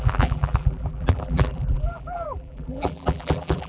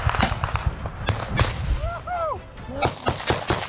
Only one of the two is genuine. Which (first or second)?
second